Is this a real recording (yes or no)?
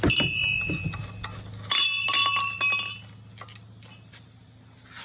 yes